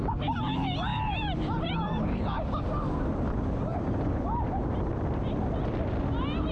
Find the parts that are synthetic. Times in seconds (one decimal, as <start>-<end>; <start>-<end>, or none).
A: 0.9-2.6; 3.7-4.5